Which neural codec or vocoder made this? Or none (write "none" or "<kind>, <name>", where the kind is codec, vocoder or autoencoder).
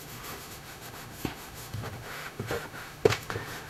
autoencoder, DAC-VAE